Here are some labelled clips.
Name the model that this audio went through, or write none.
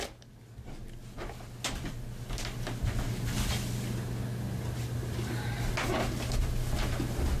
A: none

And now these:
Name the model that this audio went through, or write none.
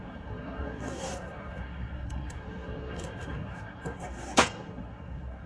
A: codec, SNAC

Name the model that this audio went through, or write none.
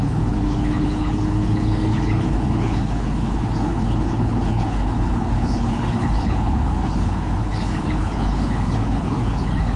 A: codec, HILCodec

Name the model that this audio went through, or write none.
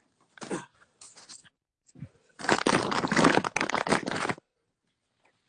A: none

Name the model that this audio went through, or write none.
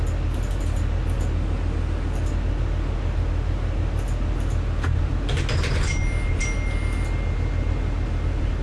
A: none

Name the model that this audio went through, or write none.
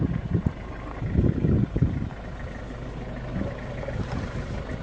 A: none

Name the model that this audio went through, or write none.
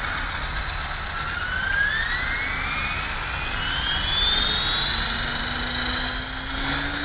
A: none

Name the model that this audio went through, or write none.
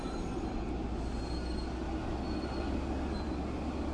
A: none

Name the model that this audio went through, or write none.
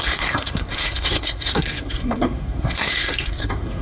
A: codec, SNAC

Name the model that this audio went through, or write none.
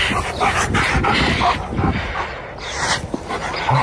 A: none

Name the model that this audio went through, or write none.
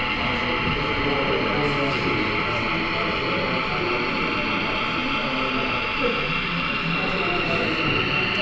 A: none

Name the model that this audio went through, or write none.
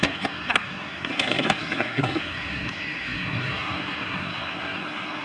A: codec, SNAC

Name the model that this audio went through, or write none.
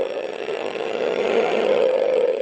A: vocoder, HiFi-GAN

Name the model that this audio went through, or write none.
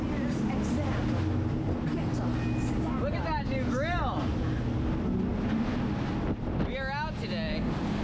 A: none